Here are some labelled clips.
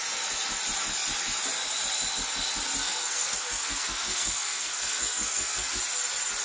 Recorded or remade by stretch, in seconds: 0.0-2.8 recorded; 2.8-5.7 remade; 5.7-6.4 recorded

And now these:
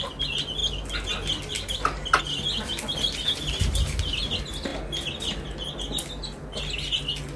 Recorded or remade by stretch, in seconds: 0.0-7.4 recorded